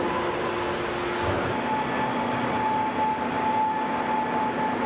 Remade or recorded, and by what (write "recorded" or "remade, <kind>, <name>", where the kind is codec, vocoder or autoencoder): recorded